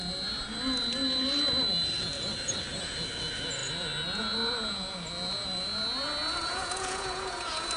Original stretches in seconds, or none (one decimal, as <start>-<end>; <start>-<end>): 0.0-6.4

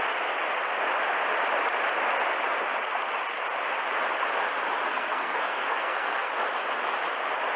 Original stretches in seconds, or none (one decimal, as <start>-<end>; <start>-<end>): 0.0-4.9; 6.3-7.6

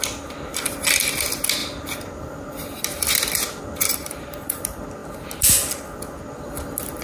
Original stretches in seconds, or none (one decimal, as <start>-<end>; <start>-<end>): 0.0-3.9; 4.6-7.0